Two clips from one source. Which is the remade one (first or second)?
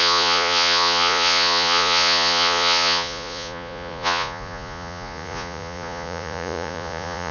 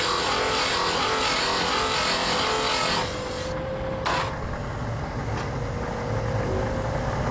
first